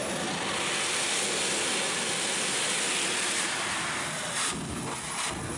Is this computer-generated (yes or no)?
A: no